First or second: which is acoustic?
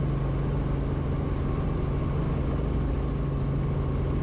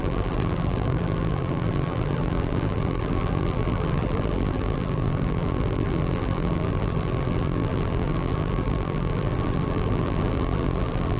first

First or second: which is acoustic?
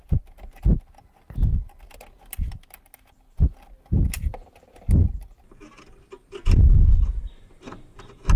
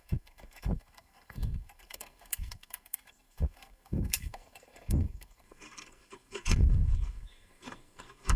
first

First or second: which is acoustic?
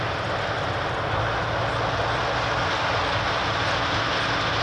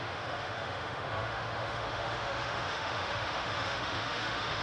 first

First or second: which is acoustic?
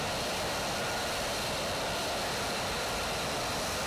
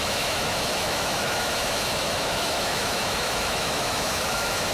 first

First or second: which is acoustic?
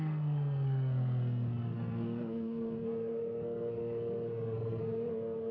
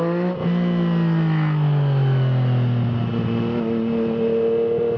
second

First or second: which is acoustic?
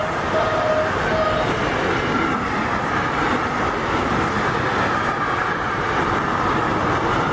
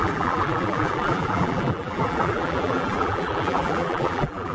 first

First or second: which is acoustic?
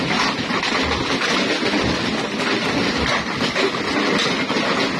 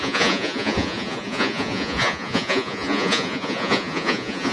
first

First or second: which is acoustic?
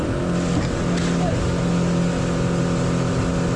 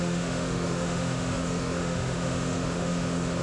first